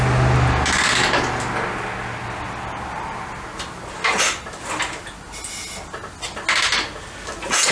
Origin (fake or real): real